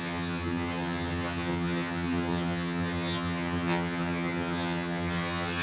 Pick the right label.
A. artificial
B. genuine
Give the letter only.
A